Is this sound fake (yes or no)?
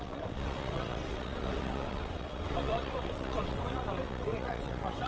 yes